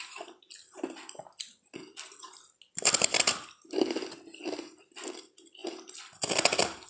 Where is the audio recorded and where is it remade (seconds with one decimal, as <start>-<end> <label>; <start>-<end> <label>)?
0.0-6.9 recorded